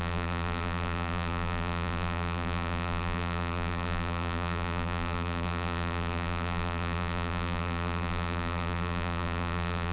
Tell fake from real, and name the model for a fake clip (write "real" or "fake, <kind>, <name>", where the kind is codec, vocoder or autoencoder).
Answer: fake, vocoder, BigVGAN v2